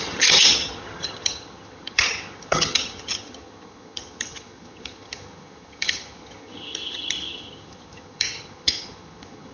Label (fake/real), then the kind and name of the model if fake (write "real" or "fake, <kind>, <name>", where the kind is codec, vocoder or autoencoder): fake, vocoder, HiFi-GAN